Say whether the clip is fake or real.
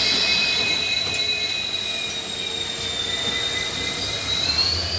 real